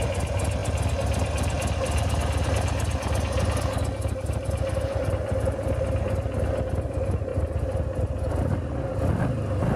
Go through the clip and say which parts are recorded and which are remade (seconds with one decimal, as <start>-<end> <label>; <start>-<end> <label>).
0.0-7.3 recorded; 7.3-8.3 remade; 8.3-9.8 recorded